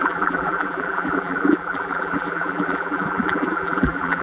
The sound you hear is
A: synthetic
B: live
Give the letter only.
A